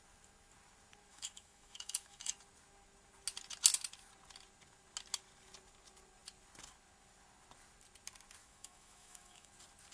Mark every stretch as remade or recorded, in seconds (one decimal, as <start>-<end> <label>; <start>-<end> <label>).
0.0-1.1 recorded; 1.1-2.3 remade; 2.3-8.4 recorded; 8.4-9.5 remade; 9.5-9.9 recorded